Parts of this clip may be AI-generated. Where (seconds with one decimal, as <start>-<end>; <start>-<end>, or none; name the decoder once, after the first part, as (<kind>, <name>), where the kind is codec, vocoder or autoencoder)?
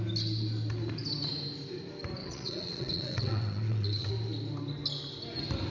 2.2-4.1 (vocoder, WaveNeXt)